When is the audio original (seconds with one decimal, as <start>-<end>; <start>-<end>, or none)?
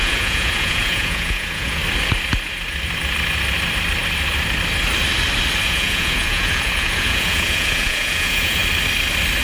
1.8-5.6; 8.6-9.4